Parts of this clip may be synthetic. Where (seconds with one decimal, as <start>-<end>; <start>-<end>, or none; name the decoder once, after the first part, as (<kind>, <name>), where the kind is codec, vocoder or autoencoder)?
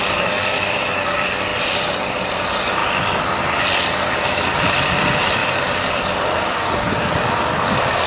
0.0-8.1 (vocoder, BigVGAN v2)